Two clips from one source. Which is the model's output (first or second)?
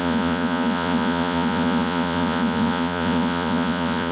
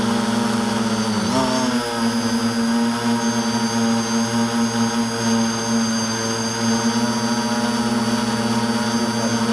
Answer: first